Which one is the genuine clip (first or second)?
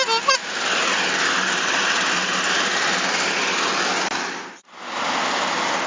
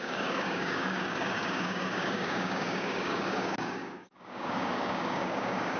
first